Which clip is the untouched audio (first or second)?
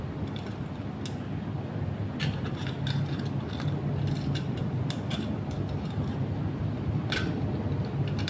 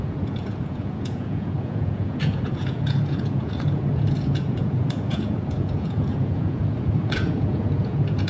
first